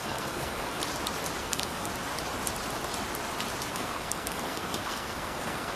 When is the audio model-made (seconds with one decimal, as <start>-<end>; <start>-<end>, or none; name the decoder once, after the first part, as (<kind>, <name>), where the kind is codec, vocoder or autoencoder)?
0.0-0.8 (codec, SNAC); 1.4-1.9; 3.7-5.8